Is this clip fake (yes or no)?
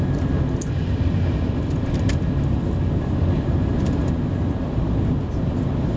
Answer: no